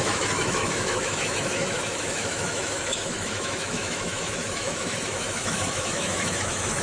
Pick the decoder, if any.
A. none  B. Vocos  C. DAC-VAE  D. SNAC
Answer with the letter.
C